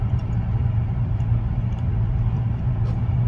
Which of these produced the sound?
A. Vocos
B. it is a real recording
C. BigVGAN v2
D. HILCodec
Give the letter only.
C